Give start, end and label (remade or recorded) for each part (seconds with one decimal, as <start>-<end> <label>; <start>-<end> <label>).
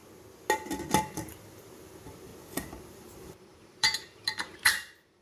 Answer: 0.0-1.0 recorded; 1.0-2.3 remade; 2.3-2.8 recorded; 2.8-5.2 remade